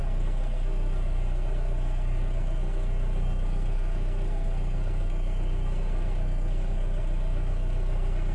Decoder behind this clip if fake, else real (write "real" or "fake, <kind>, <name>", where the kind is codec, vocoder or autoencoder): fake, codec, SNAC